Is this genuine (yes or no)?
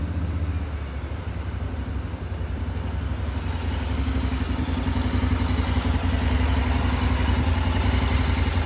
yes